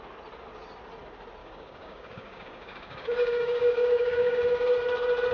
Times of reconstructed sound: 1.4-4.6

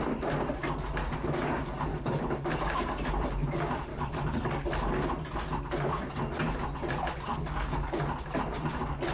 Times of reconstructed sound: 1.9-3.1; 3.9-5.1; 7.3-8.0